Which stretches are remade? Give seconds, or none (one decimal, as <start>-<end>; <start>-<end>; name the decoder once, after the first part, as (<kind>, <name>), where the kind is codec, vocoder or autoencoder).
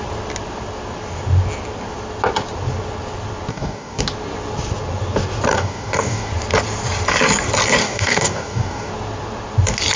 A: 3.5-4.0 (codec, DAC); 5.5-6.3; 7.8-8.9